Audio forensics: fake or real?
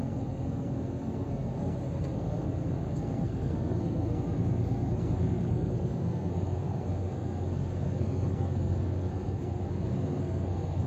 fake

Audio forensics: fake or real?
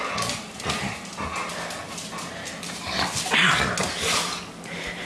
real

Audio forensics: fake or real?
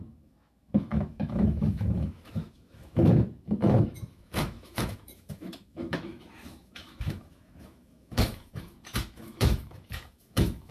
fake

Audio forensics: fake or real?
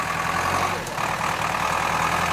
real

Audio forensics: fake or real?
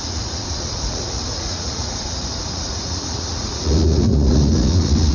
fake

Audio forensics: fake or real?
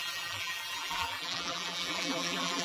fake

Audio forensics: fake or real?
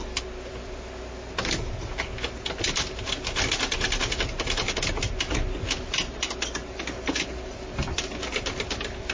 real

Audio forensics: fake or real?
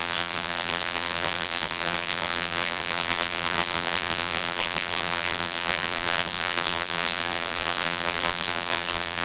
fake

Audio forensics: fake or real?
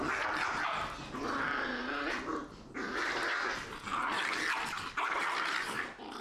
real